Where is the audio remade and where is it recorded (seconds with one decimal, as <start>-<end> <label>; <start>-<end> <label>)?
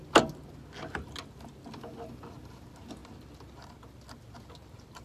0.0-5.0 recorded